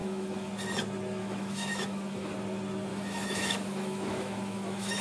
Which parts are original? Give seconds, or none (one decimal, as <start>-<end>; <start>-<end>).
0.5-1.2; 2.3-2.9